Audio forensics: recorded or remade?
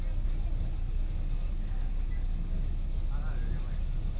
recorded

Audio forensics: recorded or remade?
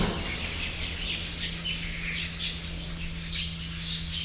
recorded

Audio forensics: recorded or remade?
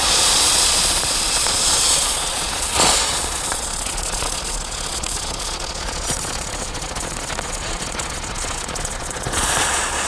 remade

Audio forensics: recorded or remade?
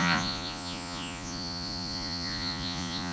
remade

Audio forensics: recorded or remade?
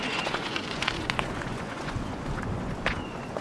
remade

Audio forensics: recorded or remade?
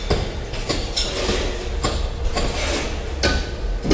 recorded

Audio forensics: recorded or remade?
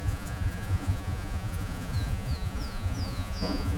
remade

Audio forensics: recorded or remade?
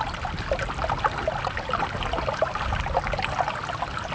recorded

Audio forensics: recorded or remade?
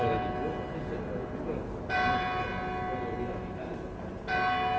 recorded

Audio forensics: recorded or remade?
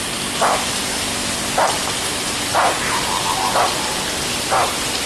recorded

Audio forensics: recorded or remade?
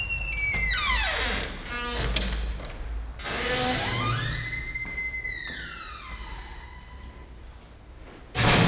recorded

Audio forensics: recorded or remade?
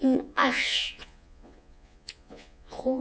remade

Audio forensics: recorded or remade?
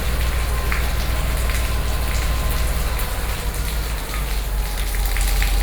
recorded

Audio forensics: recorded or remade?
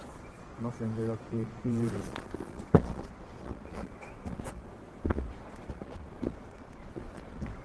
remade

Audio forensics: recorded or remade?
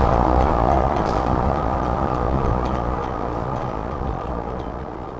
remade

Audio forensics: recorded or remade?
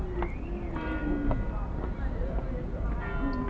recorded